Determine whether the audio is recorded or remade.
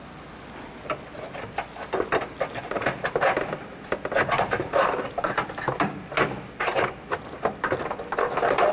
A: remade